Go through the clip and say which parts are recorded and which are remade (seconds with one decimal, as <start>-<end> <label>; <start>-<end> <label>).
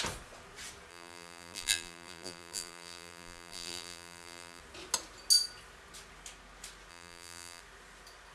0.0-0.9 recorded; 0.9-4.6 remade; 4.6-6.9 recorded; 6.9-7.6 remade; 7.6-8.3 recorded